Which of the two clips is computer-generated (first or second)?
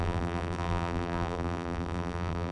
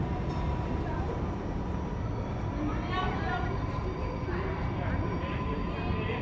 first